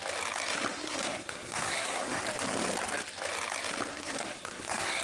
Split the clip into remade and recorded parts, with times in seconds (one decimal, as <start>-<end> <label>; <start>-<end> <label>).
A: 0.0-0.7 recorded; 0.7-2.2 remade; 2.2-3.9 recorded; 3.9-5.0 remade